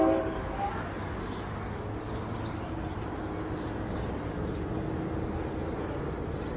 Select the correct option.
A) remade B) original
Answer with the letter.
B